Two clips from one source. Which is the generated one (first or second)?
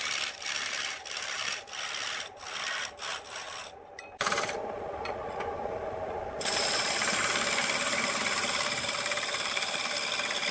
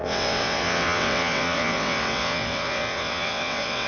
second